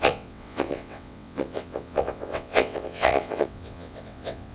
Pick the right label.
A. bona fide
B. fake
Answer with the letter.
B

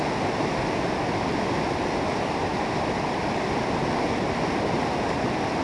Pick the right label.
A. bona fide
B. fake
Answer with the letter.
A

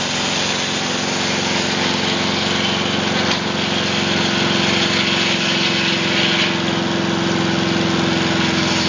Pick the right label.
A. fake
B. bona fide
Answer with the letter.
B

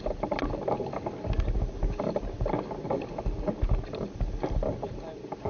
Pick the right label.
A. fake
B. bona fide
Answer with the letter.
B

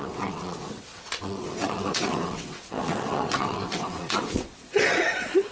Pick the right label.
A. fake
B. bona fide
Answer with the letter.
A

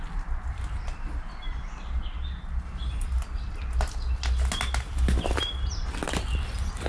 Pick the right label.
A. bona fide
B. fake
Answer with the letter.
A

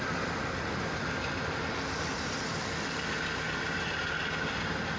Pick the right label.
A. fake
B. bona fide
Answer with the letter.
B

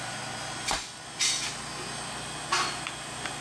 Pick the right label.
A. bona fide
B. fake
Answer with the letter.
A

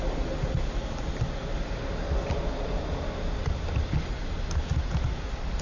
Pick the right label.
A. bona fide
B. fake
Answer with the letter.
A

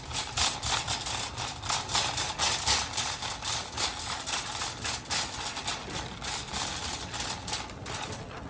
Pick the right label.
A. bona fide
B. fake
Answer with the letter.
A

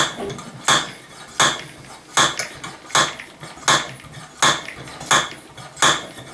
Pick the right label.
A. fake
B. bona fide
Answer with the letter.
B